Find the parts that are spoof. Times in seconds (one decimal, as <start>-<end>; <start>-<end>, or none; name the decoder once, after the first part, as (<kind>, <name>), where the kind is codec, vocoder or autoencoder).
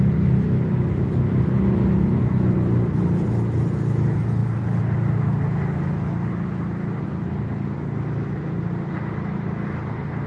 none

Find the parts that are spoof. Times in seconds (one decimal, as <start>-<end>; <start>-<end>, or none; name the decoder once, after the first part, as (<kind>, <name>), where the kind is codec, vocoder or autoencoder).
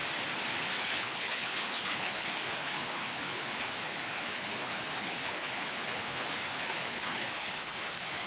0.8-8.3 (codec, HILCodec)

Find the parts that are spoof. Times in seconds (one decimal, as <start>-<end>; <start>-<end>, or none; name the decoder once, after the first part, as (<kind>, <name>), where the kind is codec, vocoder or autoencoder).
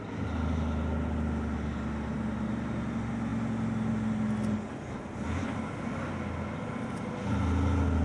none